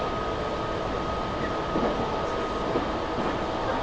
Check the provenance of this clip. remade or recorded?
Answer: recorded